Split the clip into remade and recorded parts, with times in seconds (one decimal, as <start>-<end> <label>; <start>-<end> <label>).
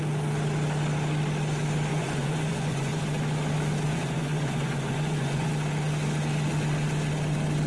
0.0-1.9 recorded; 1.9-3.0 remade; 3.0-3.9 recorded; 3.9-5.5 remade; 5.5-7.7 recorded